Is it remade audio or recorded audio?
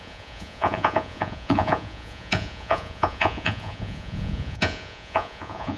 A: remade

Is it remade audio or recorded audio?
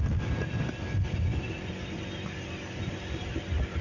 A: recorded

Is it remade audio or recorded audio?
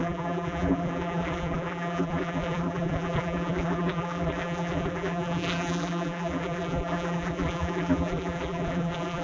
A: remade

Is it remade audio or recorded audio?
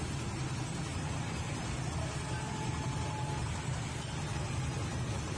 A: recorded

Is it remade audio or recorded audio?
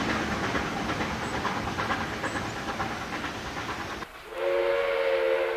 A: recorded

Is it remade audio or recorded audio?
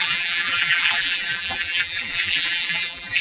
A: remade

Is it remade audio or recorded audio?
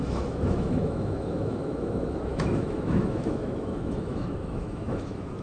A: remade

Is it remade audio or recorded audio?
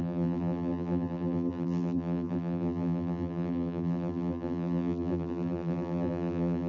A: remade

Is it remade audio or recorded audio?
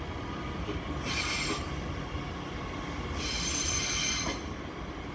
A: recorded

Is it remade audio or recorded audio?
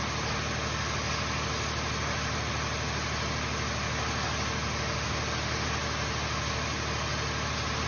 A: recorded